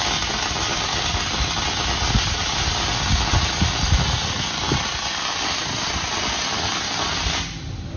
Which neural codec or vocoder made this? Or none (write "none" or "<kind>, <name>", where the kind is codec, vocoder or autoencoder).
none